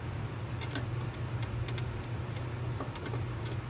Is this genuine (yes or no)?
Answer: yes